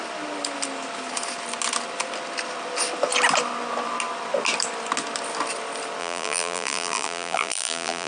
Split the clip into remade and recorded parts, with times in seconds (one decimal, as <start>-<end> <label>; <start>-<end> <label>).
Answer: 0.0-6.0 recorded; 6.0-8.1 remade